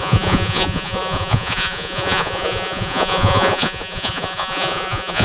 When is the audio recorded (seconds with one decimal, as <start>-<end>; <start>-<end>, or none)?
none